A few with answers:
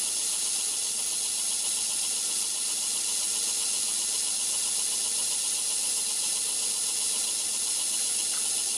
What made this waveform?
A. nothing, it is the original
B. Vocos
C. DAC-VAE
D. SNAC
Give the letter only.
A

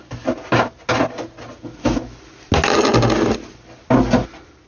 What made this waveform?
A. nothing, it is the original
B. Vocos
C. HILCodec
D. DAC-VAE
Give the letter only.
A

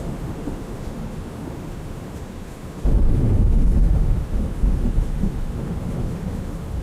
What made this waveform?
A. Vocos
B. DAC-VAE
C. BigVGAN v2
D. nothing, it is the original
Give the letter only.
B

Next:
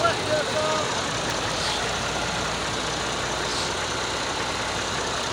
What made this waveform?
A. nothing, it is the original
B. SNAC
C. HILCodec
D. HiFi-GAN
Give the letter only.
A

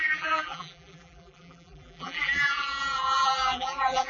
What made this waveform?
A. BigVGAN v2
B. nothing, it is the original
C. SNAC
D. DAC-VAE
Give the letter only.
A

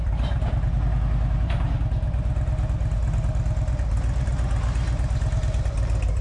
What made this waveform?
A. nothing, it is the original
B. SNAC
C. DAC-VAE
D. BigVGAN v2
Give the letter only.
A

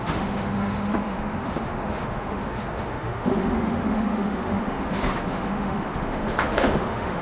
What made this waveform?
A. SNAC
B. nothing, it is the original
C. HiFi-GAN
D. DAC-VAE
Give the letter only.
D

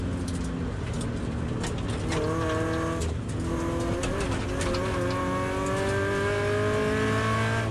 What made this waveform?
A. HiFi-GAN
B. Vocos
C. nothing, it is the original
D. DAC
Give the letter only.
C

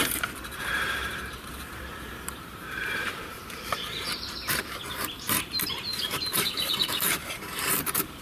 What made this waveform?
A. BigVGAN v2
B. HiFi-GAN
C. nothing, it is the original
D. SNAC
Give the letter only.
A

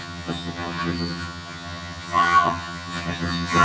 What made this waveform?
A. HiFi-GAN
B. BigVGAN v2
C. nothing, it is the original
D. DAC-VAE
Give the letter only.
A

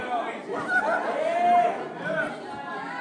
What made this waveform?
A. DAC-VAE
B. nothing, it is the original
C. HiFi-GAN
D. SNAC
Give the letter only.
B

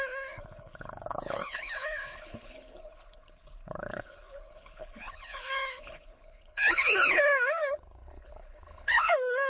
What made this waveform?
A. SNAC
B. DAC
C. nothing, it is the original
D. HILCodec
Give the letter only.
D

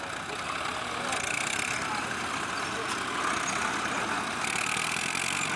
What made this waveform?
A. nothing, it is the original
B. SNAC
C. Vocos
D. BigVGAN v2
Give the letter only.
A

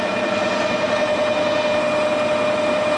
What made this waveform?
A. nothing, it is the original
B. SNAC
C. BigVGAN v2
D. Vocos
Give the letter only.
A